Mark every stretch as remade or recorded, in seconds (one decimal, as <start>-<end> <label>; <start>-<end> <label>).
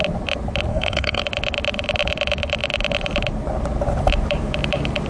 0.0-0.7 recorded; 0.7-1.2 remade; 1.2-5.1 recorded